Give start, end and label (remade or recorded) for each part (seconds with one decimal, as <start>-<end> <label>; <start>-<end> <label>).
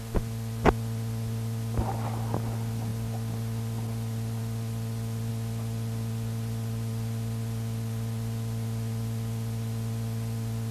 0.0-10.7 recorded